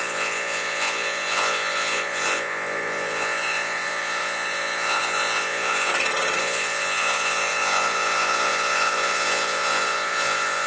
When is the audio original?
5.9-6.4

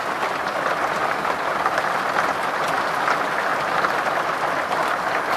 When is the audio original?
0.0-5.4

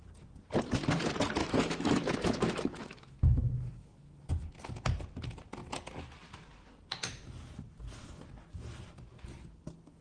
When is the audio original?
0.0-1.4; 4.3-10.0

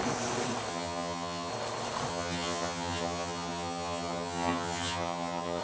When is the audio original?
0.0-0.7; 1.5-2.1

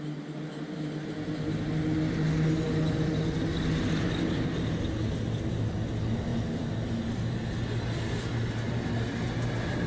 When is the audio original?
0.0-9.9

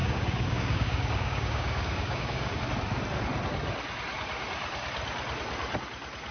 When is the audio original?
2.6-6.3

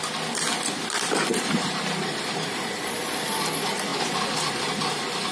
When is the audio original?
0.0-1.3; 3.2-5.3

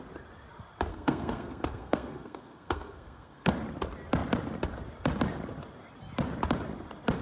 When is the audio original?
0.0-0.9; 3.5-7.2